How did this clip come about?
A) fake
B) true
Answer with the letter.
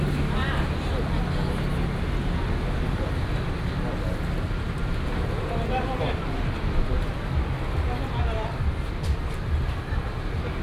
B